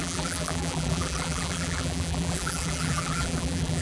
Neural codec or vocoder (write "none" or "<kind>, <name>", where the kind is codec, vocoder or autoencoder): vocoder, BigVGAN v2